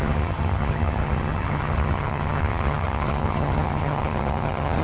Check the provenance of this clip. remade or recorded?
remade